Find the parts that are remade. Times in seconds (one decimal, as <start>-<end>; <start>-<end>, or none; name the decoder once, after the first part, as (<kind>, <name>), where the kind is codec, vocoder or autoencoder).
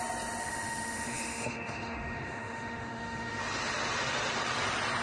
0.4-3.4 (autoencoder, DAC-VAE)